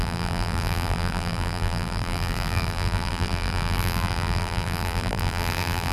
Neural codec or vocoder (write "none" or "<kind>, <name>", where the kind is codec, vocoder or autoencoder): vocoder, BigVGAN v2